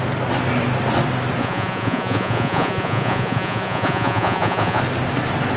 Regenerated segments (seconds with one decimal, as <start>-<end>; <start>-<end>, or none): 1.4-4.8